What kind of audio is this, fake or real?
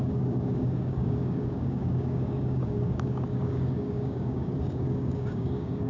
fake